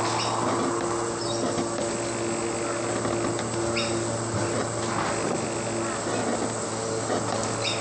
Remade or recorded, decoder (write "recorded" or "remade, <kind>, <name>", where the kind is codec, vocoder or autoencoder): recorded